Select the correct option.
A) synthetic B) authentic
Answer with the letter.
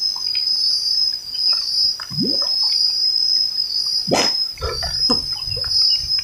B